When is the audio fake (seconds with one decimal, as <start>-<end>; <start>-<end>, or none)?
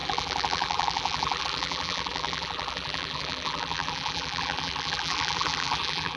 0.0-6.2